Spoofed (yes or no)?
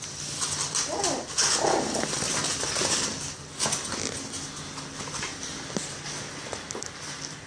no